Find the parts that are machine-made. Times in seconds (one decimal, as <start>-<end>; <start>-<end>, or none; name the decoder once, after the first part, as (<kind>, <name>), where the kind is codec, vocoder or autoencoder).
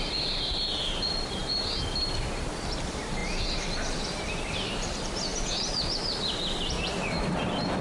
0.0-5.3 (vocoder, BigVGAN v2); 6.0-7.8